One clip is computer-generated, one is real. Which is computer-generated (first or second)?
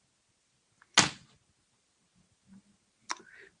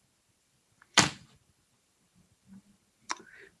second